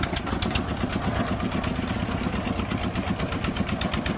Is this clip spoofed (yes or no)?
no